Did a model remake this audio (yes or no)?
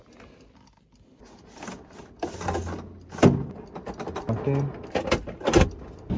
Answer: no